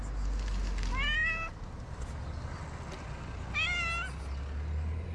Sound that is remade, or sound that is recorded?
recorded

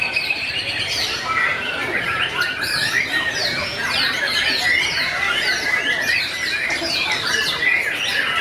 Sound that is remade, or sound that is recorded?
remade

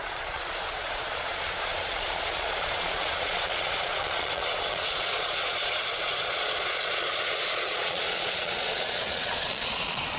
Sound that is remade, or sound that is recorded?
remade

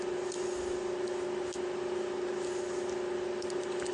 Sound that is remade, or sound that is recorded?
recorded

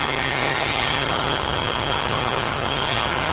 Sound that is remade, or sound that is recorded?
remade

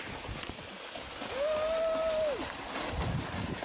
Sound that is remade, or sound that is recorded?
recorded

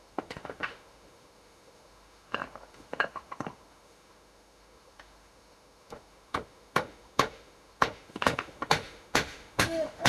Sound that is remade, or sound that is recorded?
remade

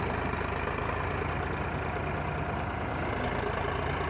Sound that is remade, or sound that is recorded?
recorded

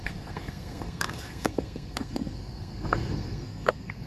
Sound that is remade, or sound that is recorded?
remade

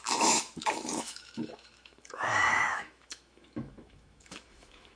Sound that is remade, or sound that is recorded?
remade